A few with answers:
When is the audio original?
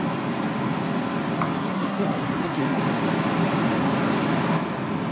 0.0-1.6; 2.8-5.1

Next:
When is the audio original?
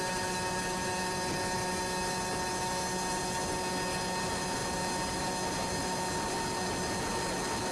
0.0-7.7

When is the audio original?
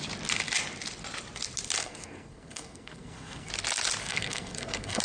0.0-1.8; 3.5-4.0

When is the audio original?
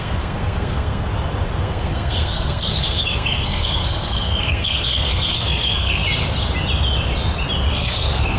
1.1-1.6; 6.0-7.7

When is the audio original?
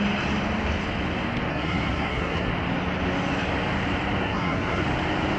0.0-1.5; 2.5-4.2; 4.8-5.4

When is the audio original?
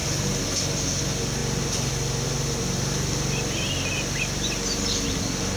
0.0-5.6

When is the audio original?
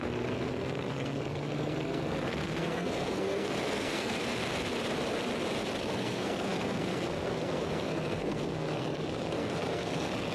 4.2-5.8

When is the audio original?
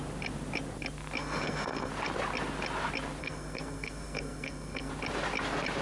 0.0-1.2; 1.9-3.2; 4.9-5.8